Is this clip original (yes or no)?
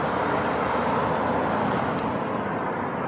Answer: yes